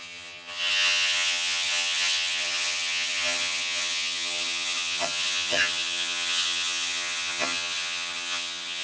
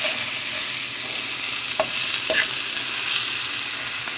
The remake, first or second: first